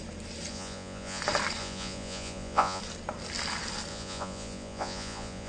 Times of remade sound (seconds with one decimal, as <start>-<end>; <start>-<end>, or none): 0.5-1.2; 1.6-2.8; 3.9-5.5